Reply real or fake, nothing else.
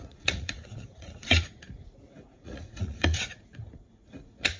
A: fake